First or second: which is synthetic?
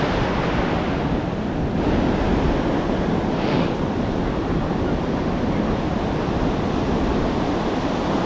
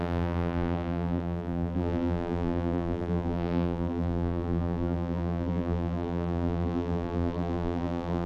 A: second